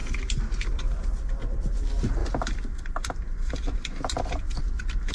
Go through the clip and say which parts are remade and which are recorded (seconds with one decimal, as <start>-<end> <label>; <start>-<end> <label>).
0.0-5.1 recorded